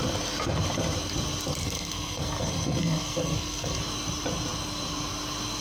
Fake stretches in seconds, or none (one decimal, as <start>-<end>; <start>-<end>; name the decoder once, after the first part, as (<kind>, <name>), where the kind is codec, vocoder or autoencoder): 1.6-3.8 (codec, SNAC)